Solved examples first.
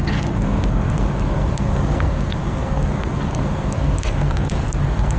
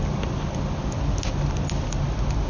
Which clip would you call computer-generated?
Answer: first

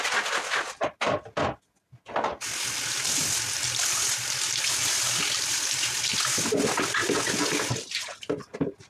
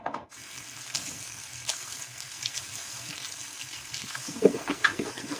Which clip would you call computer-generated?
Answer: second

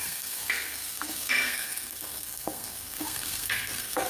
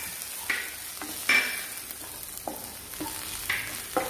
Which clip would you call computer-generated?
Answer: first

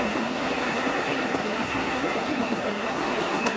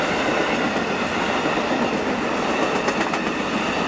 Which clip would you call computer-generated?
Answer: first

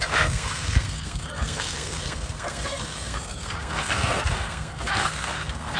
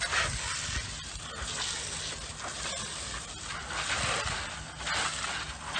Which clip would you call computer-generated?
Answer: first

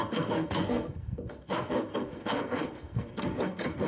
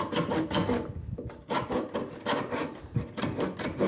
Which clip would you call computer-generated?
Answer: first